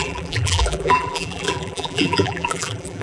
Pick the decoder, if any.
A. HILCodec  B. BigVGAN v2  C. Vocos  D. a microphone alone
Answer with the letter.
B